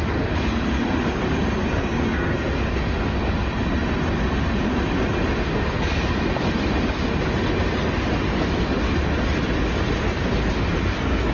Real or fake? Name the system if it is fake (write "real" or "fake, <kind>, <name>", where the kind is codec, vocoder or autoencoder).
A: real